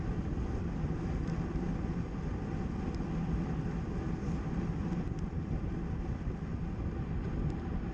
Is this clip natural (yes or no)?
yes